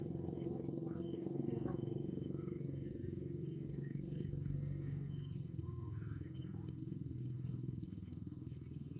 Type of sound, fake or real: fake